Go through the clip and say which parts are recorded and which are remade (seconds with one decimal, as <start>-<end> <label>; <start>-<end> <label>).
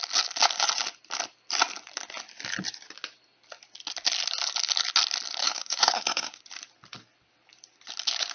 0.0-5.4 recorded; 5.4-6.4 remade; 6.4-8.3 recorded